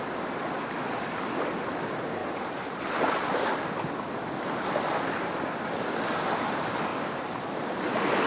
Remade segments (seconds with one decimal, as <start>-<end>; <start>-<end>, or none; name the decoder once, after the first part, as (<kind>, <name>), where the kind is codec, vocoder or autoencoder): 2.2-2.8 (vocoder, BigVGAN v2); 6.9-7.8